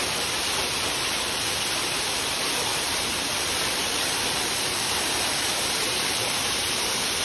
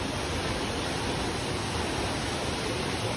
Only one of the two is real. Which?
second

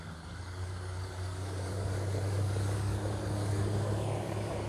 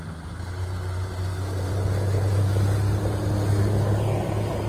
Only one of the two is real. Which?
second